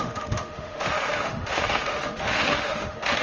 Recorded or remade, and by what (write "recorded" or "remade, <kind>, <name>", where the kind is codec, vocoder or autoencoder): remade, autoencoder, DAC-VAE